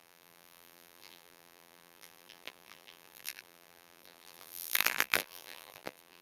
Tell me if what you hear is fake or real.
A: fake